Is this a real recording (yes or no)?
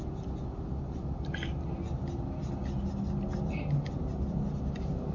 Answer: yes